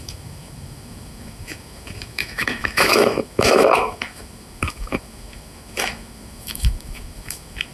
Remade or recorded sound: remade